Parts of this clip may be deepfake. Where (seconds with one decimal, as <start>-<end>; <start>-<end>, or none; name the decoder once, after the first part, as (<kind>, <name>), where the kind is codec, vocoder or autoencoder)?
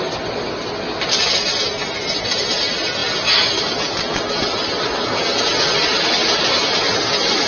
none